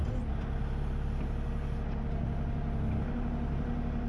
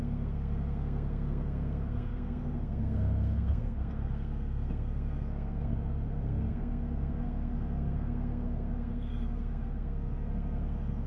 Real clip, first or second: first